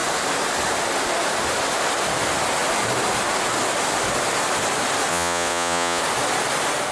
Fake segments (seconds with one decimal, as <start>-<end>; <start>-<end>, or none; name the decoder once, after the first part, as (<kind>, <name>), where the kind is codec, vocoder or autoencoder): 5.1-6.0 (vocoder, Vocos)